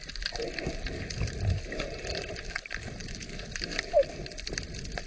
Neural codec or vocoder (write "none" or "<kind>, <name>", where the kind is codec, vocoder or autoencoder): none